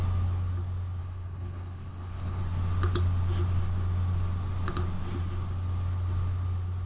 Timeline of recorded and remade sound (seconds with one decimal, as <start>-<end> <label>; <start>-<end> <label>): 0.0-1.0 recorded; 1.0-2.4 remade; 2.4-6.9 recorded